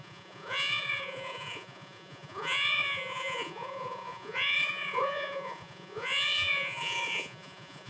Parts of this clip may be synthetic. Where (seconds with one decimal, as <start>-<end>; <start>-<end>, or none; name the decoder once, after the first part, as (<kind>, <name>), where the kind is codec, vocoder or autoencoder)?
0.0-7.9 (vocoder, Vocos)

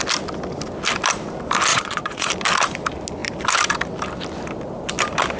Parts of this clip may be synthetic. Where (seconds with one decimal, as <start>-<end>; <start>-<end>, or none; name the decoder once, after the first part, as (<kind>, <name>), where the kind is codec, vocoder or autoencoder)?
1.7-2.3 (vocoder, Vocos)

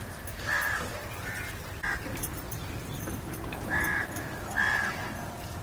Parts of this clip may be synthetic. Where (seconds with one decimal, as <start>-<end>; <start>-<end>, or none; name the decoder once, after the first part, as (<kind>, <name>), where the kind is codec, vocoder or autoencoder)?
1.0-4.4 (vocoder, BigVGAN v2)

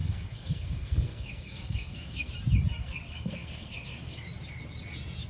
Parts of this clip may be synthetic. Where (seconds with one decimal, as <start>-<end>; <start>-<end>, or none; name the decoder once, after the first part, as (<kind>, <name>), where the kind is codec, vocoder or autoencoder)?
0.0-2.3 (codec, SNAC); 2.8-4.2